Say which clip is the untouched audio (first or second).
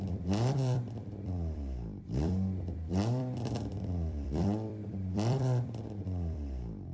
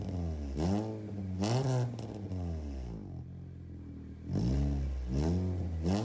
second